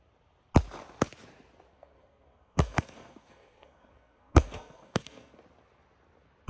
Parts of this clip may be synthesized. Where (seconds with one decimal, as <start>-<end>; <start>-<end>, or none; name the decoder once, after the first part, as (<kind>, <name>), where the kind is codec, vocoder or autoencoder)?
1.7-5.4 (codec, SNAC)